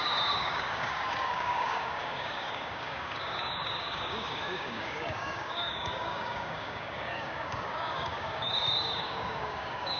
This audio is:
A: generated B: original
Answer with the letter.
A